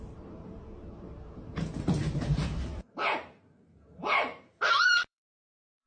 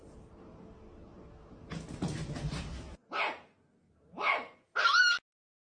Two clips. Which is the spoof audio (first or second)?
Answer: first